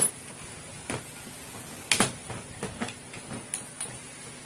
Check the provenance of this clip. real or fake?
real